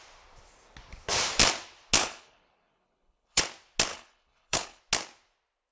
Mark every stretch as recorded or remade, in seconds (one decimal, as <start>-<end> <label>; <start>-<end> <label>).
0.0-2.0 recorded; 2.0-3.4 remade; 3.4-3.9 recorded; 3.9-4.8 remade; 4.8-5.7 recorded

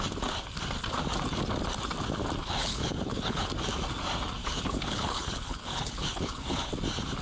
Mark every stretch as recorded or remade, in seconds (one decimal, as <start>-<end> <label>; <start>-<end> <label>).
0.0-2.4 recorded; 2.4-3.5 remade; 3.5-4.4 recorded; 4.4-6.7 remade; 6.7-7.2 recorded